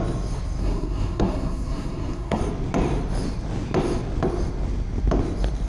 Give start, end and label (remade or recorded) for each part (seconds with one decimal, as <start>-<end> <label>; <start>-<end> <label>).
0.0-0.6 recorded; 0.6-2.4 remade; 2.4-5.7 recorded